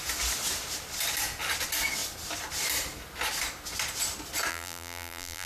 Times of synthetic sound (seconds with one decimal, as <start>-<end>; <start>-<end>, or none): 4.5-5.5